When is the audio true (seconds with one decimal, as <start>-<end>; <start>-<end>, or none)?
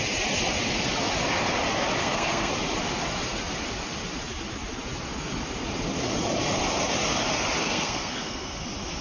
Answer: 0.0-2.0; 2.5-7.6; 8.6-9.0